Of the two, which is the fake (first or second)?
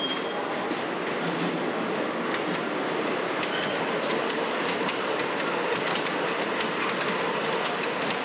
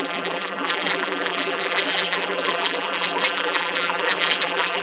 second